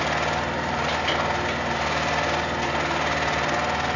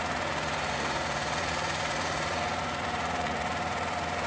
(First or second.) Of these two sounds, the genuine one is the first